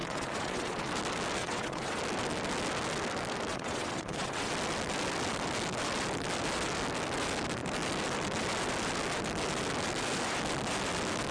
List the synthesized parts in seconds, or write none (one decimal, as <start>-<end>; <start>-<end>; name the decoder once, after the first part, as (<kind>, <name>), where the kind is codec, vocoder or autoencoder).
0.0-0.9 (vocoder, WaveNeXt); 1.4-2.0; 3.5-4.5